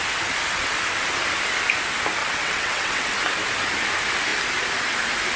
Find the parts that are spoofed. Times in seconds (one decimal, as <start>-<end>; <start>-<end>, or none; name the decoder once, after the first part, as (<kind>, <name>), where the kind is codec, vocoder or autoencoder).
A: 2.2-3.1 (vocoder, WaveNeXt)